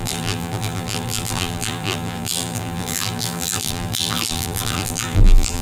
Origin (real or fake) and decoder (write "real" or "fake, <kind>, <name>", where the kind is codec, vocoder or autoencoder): fake, vocoder, BigVGAN v2